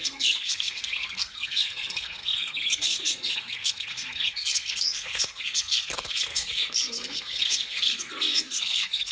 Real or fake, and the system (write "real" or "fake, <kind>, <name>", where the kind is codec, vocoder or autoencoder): fake, codec, SNAC